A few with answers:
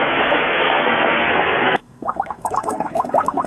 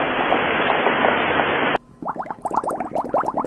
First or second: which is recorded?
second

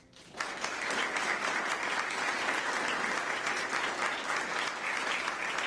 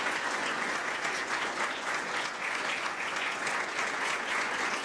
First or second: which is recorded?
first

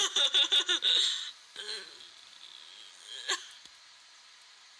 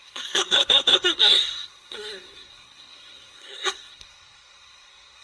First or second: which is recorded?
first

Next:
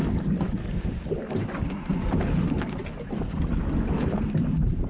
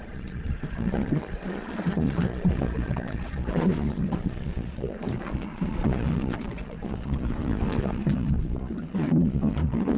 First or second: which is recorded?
first